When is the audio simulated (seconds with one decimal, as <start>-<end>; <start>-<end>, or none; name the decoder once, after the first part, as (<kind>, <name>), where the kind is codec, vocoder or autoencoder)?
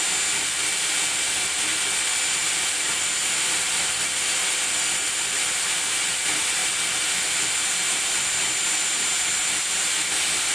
none